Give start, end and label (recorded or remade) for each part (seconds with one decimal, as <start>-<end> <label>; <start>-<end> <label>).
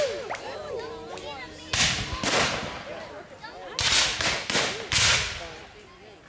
0.0-6.3 recorded